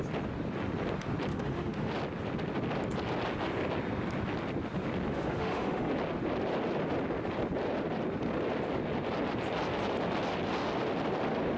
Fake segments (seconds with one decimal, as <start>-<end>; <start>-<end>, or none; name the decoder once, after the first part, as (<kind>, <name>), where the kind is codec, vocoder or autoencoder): 1.3-1.9 (autoencoder, DAC-VAE); 5.1-5.9